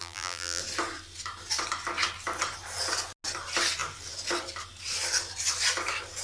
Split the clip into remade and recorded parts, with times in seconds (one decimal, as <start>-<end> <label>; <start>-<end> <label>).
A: 0.0-0.6 remade; 0.6-6.2 recorded